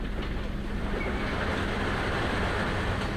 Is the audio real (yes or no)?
yes